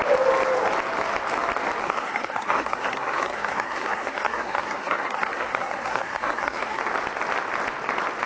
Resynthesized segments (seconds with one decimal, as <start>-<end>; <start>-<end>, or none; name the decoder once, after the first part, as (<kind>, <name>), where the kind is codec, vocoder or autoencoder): 1.8-6.8 (codec, SNAC)